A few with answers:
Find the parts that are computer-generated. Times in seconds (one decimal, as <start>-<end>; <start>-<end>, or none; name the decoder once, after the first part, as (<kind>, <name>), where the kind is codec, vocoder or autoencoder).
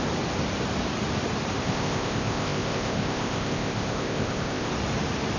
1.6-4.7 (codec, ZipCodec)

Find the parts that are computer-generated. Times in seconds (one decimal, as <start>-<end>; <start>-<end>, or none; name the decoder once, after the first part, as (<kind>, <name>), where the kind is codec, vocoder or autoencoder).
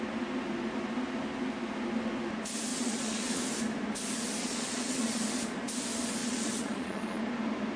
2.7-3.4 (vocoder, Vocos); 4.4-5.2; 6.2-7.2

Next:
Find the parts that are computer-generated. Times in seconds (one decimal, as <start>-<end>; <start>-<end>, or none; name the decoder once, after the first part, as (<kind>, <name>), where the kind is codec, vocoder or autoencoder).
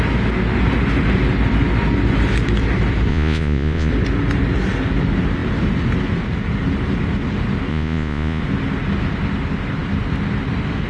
3.1-3.9 (vocoder, Vocos); 7.7-8.4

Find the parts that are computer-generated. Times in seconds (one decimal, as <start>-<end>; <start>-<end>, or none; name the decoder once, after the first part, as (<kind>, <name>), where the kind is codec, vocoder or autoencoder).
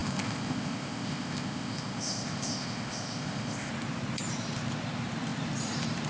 0.0-3.7 (codec, ZipCodec)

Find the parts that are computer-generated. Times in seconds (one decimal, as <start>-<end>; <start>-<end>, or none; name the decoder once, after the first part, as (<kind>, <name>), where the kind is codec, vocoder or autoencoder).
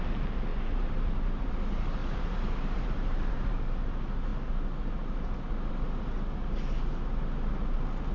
0.5-1.5 (vocoder, BigVGAN v2); 2.0-3.7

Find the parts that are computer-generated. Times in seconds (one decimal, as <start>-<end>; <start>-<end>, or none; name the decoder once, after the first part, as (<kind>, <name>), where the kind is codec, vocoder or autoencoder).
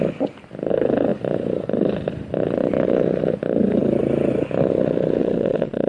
5.2-5.9 (vocoder, Vocos)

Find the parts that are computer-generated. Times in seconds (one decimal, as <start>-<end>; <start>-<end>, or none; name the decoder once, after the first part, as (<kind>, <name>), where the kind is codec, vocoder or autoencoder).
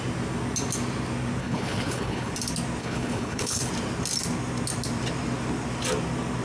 1.4-2.3 (codec, HILCodec); 2.8-3.7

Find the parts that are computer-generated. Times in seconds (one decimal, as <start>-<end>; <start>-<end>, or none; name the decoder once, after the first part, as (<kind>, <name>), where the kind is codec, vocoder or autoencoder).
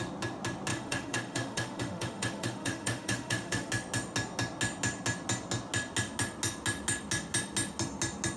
0.7-3.7 (autoencoder, DAC-VAE)